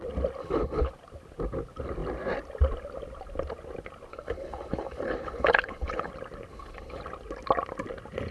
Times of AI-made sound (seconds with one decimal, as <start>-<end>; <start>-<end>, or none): 0.4-0.9; 4.1-6.1; 6.5-7.0

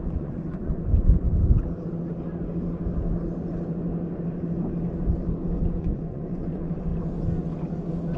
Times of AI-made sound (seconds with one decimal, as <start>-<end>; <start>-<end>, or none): 0.0-0.9; 5.8-6.9

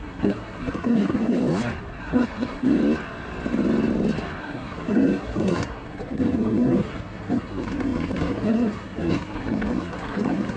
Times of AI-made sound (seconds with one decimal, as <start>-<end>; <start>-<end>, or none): 0.0-1.4; 2.0-2.8; 4.4-10.6